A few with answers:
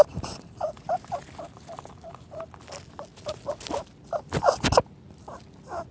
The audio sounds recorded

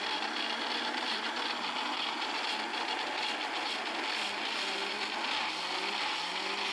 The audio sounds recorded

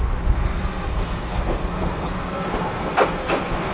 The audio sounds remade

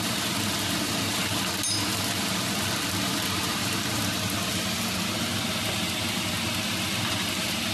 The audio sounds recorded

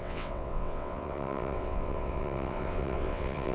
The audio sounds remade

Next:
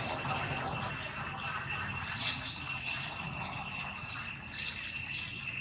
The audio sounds recorded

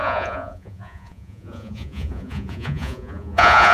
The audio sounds remade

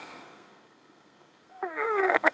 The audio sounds remade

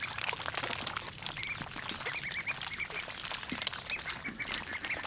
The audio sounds recorded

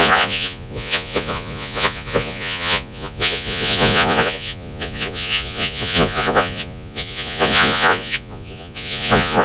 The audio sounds remade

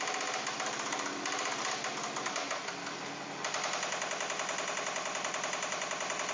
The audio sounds recorded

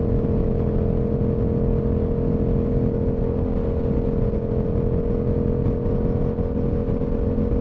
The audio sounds recorded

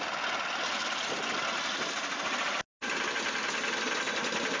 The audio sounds recorded